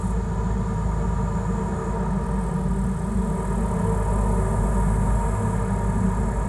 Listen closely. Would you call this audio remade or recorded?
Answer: recorded